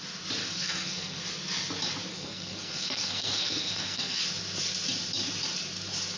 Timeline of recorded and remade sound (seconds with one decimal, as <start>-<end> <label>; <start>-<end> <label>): 0.0-0.4 recorded; 0.4-1.2 remade; 1.2-2.1 recorded; 2.1-4.2 remade; 4.2-6.2 recorded